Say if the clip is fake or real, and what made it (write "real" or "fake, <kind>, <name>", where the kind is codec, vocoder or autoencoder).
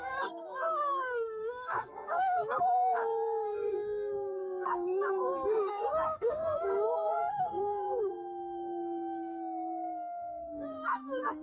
fake, codec, SNAC